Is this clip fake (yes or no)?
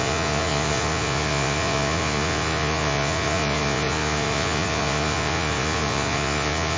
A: yes